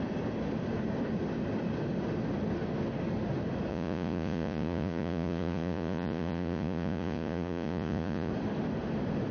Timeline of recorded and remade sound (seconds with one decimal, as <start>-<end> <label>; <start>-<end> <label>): 0.0-3.7 recorded; 3.7-8.3 remade; 8.3-9.3 recorded